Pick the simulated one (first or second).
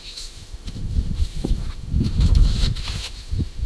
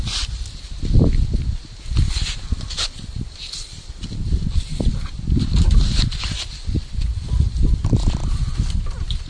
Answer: first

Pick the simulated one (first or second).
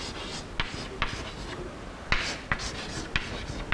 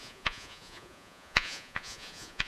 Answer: second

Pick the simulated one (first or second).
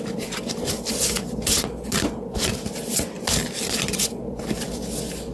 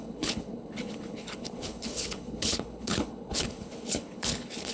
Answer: second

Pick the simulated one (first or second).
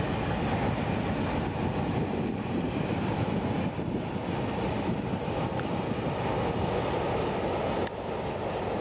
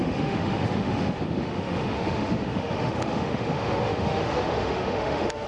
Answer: second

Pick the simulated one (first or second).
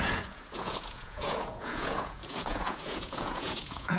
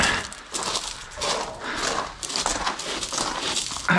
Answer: first